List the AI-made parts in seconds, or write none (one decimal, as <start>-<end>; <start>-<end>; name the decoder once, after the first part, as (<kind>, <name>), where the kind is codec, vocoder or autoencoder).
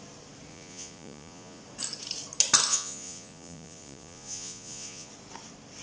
0.5-1.6 (vocoder, Vocos); 2.7-5.1